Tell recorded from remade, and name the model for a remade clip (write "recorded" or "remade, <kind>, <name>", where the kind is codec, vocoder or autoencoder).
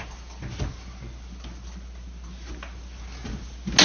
recorded